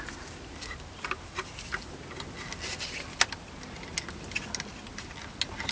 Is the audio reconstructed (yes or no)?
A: no